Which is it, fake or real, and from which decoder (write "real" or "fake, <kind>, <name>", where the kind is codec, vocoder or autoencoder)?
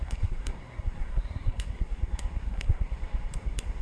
fake, codec, SNAC